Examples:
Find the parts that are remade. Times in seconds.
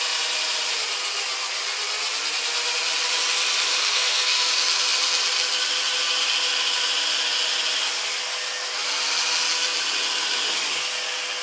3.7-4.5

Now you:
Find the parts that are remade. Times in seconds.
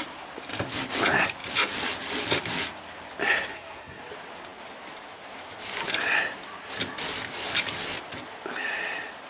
3.5-4.0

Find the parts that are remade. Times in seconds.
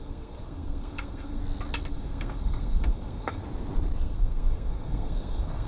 0.0-1.4; 1.9-3.4; 4.0-5.7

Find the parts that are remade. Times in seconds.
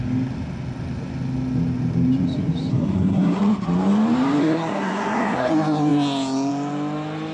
2.7-3.4; 4.4-5.5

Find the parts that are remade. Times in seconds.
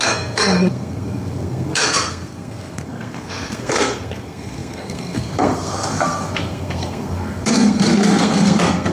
0.0-8.9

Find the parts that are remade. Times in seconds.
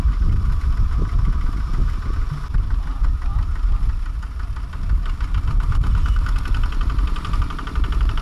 none